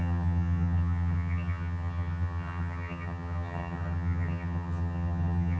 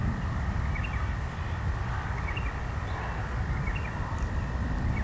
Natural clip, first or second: second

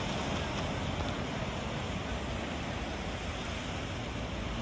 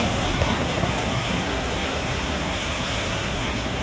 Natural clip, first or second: first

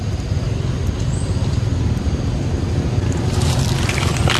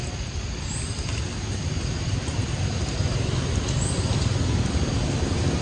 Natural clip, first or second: first